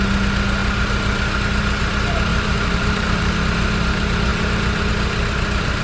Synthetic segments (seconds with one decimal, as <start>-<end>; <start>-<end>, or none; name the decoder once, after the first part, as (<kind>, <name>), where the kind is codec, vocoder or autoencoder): 2.3-3.3 (vocoder, BigVGAN v2)